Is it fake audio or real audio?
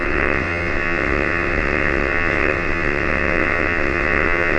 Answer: fake